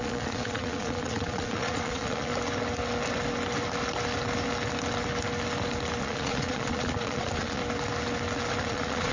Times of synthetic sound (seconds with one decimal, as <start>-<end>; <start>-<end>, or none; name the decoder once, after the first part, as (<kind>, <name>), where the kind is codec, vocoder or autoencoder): 0.0-2.3 (vocoder, Vocos); 6.0-7.6; 8.6-9.1

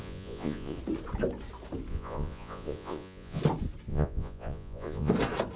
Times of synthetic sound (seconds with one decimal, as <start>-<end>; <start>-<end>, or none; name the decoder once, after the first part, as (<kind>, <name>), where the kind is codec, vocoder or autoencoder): 0.0-0.8 (vocoder, Vocos); 1.9-3.4; 3.9-5.1

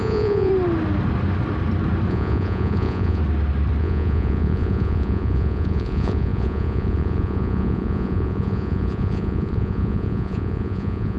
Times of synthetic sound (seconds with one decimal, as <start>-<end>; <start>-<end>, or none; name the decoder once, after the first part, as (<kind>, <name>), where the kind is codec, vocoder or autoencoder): 0.0-0.5 (vocoder, Vocos); 2.1-3.2; 3.8-11.2

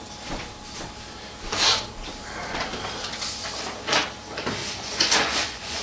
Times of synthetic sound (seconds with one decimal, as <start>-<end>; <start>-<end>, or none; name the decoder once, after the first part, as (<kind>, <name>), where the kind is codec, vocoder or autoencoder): 4.6-5.8 (vocoder, Vocos)

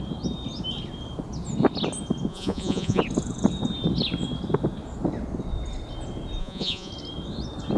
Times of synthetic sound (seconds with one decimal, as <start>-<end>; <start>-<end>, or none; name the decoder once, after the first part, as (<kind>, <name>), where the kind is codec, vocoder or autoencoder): 2.3-3.0 (vocoder, Vocos); 6.4-6.9